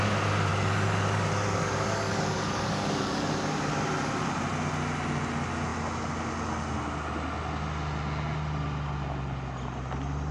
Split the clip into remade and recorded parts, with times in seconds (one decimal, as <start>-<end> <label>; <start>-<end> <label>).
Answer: 0.0-0.5 recorded; 0.5-3.7 remade; 3.7-10.3 recorded